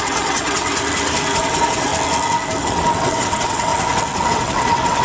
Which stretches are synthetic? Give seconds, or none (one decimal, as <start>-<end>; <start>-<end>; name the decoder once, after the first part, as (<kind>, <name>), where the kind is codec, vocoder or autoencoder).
0.0-0.7 (vocoder, WaveNeXt); 1.4-1.9; 2.6-3.7; 4.3-5.0